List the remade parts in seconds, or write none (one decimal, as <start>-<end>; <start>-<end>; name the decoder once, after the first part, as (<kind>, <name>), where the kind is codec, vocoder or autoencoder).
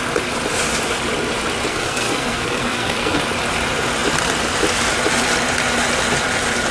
1.7-3.2 (codec, SNAC)